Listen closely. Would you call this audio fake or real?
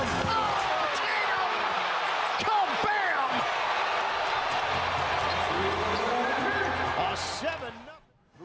real